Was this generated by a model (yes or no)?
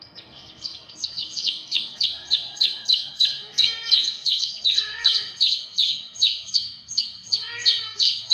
yes